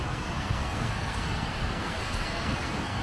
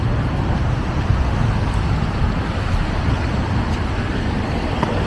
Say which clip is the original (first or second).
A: second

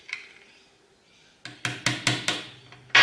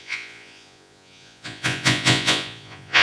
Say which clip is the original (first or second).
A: first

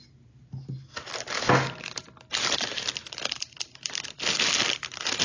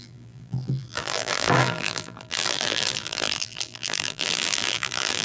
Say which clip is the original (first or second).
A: first